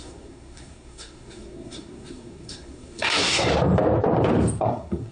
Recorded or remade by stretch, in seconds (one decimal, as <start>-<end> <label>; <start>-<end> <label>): 0.0-3.5 remade; 3.5-4.6 recorded; 4.6-5.1 remade